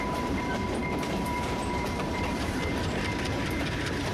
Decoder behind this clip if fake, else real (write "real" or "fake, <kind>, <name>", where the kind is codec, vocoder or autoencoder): fake, vocoder, BigVGAN v2